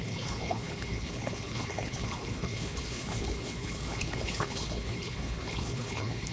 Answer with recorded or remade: remade